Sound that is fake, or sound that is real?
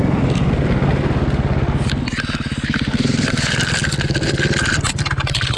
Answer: real